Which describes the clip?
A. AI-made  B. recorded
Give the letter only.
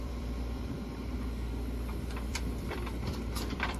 A